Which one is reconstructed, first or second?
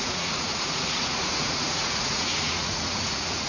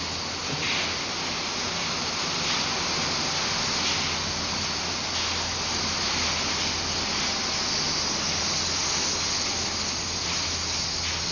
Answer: first